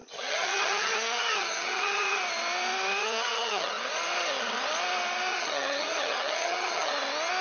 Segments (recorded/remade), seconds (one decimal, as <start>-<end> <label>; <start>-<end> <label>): 0.0-2.2 remade; 2.2-3.0 recorded; 3.0-3.7 remade; 3.7-5.3 recorded; 5.3-6.9 remade; 6.9-7.4 recorded

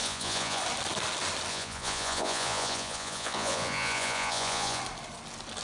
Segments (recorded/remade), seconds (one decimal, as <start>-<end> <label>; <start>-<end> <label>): 0.0-0.6 remade; 0.6-1.5 recorded; 1.5-4.8 remade; 4.8-5.6 recorded

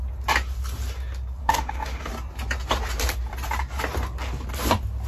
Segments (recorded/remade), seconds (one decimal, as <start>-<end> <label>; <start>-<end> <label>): 0.0-1.4 recorded; 1.4-2.1 remade; 2.1-5.1 recorded

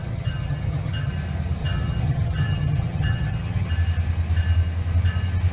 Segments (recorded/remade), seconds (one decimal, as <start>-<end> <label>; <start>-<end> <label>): 0.0-1.1 remade; 1.1-1.6 recorded; 1.6-3.7 remade; 3.7-5.5 recorded